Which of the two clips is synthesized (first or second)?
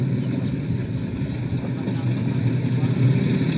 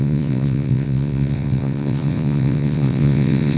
second